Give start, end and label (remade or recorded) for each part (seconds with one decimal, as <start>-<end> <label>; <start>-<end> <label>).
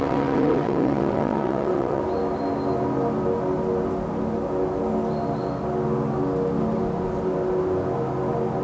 0.0-2.0 remade; 2.0-8.6 recorded